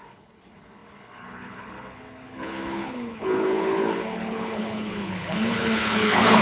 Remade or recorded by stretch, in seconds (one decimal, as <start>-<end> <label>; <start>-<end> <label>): 0.0-6.4 remade